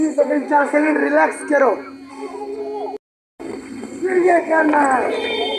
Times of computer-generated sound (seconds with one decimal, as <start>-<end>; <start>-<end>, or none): 0.0-1.0; 2.1-2.6; 3.4-4.6